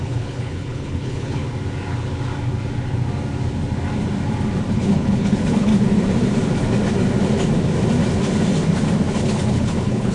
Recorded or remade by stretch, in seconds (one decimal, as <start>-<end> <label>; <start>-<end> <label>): 0.0-1.4 remade; 1.4-4.7 recorded; 4.7-5.7 remade; 5.7-9.5 recorded; 9.5-10.1 remade